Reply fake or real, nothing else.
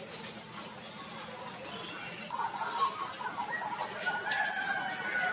real